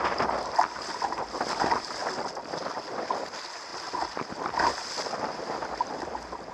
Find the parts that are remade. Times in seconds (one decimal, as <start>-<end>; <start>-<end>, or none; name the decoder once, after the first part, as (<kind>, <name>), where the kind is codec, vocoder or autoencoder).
none